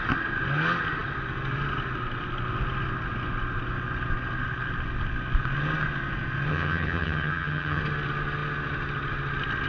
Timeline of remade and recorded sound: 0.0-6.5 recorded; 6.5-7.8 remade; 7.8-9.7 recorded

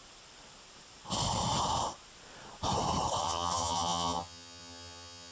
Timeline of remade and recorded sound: 0.0-3.2 recorded; 3.2-5.3 remade

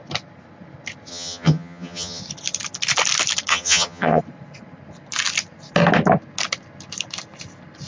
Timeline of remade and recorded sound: 0.0-1.1 recorded; 1.1-2.2 remade; 2.2-3.5 recorded; 3.5-4.2 remade; 4.2-7.9 recorded